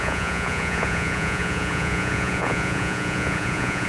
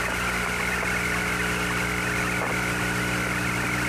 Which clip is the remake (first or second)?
first